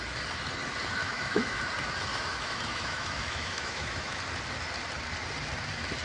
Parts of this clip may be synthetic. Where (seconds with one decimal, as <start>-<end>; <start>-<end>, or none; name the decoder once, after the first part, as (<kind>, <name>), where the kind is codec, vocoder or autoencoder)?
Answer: 1.0-1.6 (autoencoder, DAC-VAE); 2.1-4.2

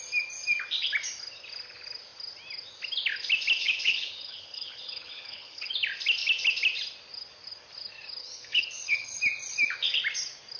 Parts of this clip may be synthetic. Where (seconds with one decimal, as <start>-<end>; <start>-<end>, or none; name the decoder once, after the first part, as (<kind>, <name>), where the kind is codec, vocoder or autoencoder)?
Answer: 3.6-5.7 (codec, HILCodec); 8.2-9.2

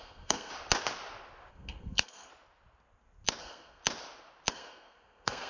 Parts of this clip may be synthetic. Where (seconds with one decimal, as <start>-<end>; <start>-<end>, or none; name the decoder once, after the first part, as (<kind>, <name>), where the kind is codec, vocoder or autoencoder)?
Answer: 0.0-0.5 (codec, SNAC); 1.5-2.3; 3.4-3.8; 4.5-5.5

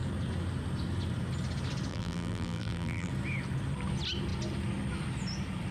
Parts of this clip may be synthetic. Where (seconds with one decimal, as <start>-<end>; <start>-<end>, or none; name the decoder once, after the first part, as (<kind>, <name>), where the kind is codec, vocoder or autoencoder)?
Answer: 1.9-3.1 (vocoder, BigVGAN v2)